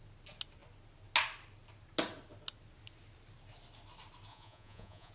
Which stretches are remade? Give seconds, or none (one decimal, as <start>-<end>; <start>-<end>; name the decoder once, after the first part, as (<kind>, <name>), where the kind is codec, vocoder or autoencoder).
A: 4.3-5.1 (vocoder, Vocos)